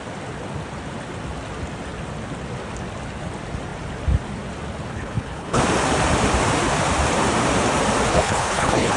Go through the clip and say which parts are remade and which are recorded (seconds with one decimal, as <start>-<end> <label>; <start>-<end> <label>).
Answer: 0.0-4.9 recorded; 4.9-5.6 remade; 5.6-8.1 recorded; 8.1-9.0 remade